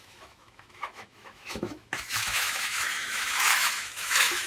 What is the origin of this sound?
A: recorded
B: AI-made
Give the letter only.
B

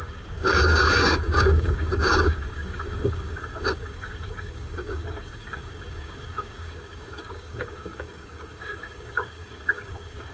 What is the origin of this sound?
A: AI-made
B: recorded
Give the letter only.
A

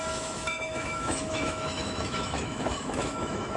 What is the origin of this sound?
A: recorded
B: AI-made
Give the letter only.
B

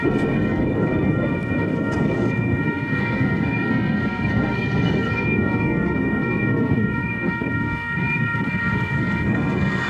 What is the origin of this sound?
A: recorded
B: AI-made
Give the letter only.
B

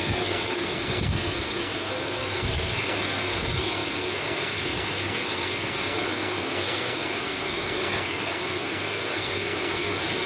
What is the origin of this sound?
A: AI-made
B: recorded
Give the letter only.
A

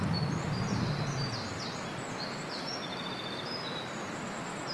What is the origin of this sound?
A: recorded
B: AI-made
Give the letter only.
A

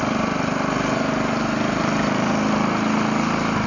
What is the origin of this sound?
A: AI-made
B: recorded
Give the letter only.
B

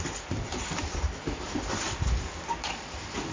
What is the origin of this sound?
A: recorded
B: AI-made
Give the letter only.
A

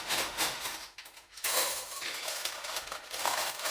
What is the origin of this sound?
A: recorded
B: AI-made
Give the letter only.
B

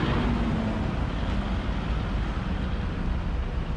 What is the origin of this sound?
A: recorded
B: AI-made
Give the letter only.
A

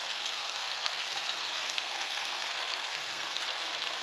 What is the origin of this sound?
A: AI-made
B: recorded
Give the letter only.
A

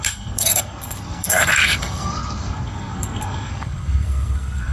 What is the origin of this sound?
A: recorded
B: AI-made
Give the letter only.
B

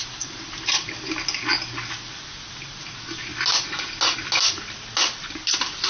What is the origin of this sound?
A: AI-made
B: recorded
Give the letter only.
B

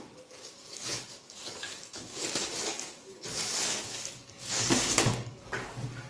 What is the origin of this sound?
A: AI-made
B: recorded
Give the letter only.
A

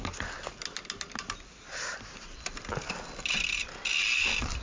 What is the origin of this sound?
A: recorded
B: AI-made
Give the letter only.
A